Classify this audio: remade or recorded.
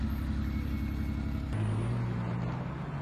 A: recorded